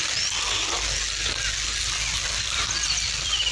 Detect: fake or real real